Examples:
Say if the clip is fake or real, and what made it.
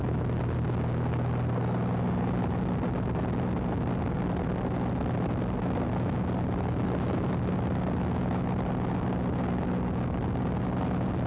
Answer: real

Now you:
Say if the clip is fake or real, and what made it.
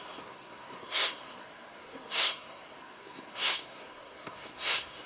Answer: fake, codec, SNAC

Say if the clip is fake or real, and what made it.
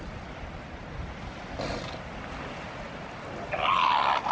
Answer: real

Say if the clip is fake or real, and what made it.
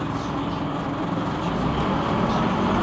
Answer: real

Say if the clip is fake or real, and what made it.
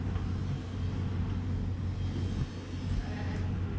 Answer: real